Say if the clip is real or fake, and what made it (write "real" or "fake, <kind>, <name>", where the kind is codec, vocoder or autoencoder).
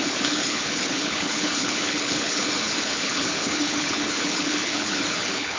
fake, codec, HILCodec